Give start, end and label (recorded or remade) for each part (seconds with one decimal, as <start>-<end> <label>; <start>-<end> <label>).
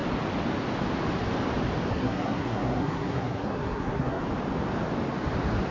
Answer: 0.0-1.9 recorded; 1.9-4.2 remade; 4.2-5.7 recorded